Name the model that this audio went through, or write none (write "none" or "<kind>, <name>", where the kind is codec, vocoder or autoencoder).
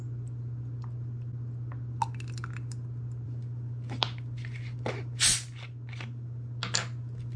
none